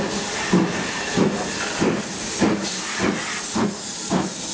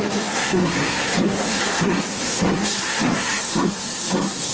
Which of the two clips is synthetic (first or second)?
second